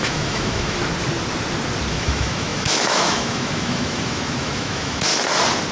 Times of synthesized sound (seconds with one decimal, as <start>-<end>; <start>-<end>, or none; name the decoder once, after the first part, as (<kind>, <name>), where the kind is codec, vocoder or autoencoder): 0.0-0.8 (autoencoder, DAC-VAE); 1.9-5.1